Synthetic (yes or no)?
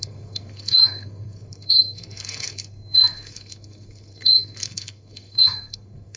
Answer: yes